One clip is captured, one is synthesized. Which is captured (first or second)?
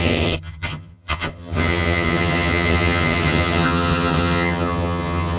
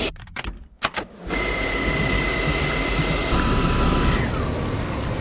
second